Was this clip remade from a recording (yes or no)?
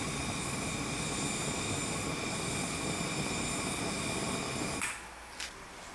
no